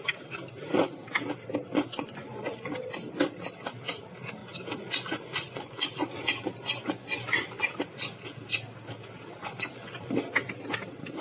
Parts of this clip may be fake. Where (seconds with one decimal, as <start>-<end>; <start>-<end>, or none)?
1.7-2.7; 4.4-7.7; 9.4-10.1